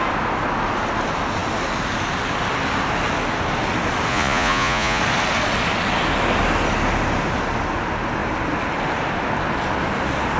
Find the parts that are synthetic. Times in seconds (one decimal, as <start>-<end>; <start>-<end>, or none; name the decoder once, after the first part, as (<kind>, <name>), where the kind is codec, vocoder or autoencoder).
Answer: 4.1-5.0 (vocoder, Vocos)